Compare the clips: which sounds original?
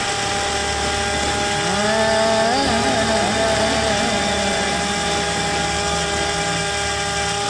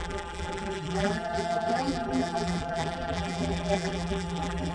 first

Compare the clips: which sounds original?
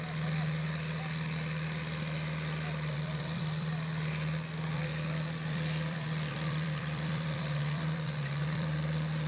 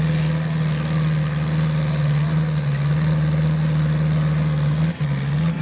second